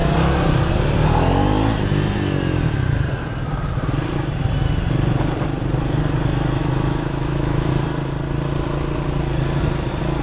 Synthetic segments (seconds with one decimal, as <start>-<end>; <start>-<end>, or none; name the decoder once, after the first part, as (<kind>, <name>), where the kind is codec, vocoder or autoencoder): 6.6-7.7 (autoencoder, DAC-VAE)